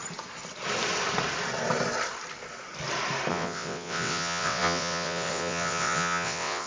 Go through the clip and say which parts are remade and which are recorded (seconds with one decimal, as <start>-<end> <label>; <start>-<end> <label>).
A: 0.0-3.3 recorded; 3.3-6.7 remade